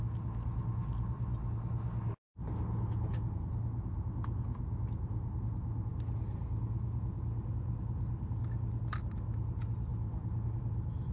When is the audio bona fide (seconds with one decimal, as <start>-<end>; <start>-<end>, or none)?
0.0-11.1